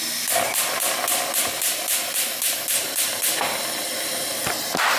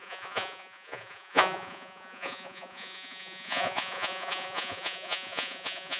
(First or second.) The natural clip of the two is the first